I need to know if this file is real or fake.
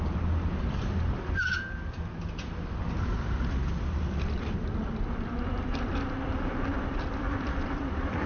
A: fake